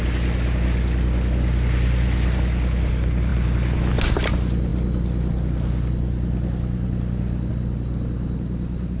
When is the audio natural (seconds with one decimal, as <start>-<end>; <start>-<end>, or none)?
0.0-9.0